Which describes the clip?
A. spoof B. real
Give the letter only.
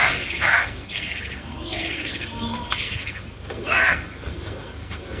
A